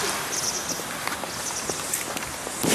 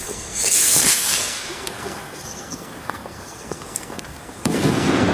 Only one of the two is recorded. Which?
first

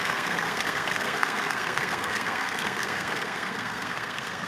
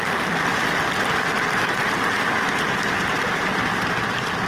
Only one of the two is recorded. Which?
second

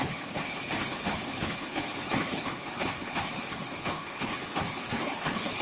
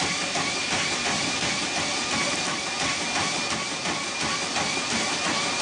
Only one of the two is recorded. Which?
second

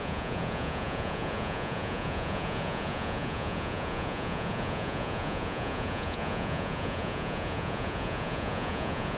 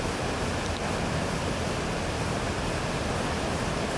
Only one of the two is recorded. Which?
second